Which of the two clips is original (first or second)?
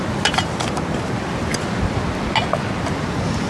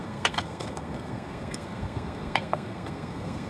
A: first